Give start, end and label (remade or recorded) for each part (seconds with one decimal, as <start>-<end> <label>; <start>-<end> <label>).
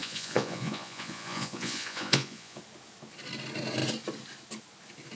0.0-2.6 remade; 2.6-5.2 recorded